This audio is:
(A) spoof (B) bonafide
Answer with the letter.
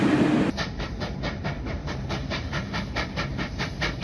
A